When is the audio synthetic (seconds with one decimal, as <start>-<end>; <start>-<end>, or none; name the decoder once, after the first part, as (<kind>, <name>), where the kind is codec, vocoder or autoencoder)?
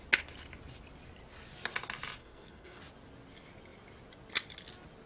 2.2-2.8 (codec, SNAC)